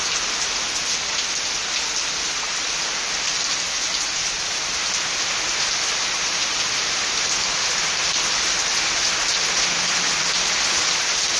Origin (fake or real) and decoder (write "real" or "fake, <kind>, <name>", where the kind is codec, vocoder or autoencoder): real